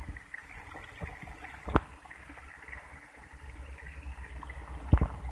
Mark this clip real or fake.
real